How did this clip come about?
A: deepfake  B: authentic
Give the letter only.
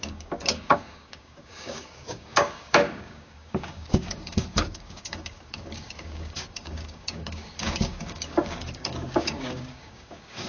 A